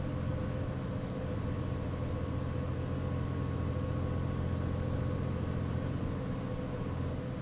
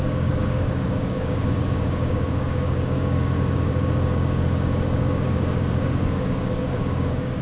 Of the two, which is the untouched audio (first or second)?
first